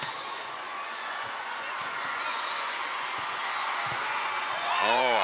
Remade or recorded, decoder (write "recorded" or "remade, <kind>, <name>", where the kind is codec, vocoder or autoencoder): remade, vocoder, Vocos